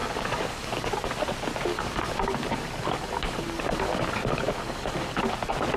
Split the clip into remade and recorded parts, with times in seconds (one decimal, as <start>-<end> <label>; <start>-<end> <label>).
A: 0.0-0.9 remade; 0.9-1.7 recorded; 1.7-5.2 remade; 5.2-5.8 recorded